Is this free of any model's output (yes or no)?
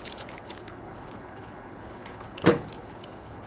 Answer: no